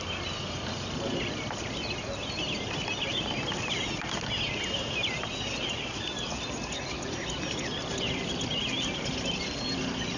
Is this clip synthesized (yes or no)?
no